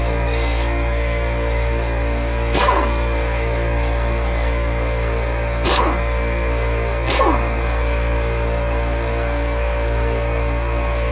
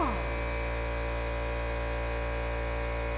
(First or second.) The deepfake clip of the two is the first